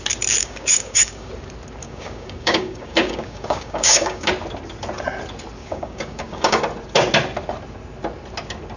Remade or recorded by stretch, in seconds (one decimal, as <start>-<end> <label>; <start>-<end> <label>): 0.0-0.4 recorded; 0.4-1.3 remade; 1.3-1.8 recorded; 1.8-4.3 remade; 4.3-5.6 recorded; 5.6-6.6 remade; 6.6-8.8 recorded

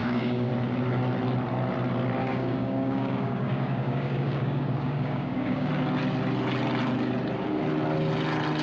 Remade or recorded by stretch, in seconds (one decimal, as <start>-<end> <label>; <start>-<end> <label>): 0.0-0.5 remade; 0.5-2.2 recorded; 2.2-5.7 remade; 5.7-8.6 recorded

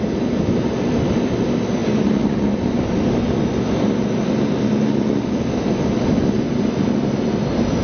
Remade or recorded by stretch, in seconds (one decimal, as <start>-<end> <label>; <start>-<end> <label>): 0.0-7.8 recorded

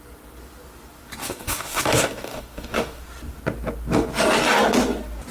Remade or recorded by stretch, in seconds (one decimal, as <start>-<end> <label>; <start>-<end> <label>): 0.0-1.2 recorded; 1.2-3.0 remade; 3.0-5.3 recorded

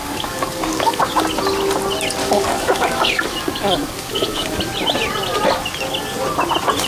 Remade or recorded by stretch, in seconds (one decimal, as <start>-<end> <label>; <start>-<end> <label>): 0.0-1.1 remade; 1.1-2.2 recorded; 2.2-4.6 remade; 4.6-6.9 recorded